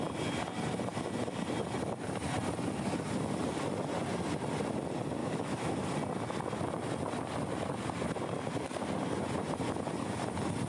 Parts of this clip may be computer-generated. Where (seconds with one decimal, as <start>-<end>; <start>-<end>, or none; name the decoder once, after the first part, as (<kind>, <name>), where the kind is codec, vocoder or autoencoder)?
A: 5.2-5.8 (autoencoder, DAC-VAE)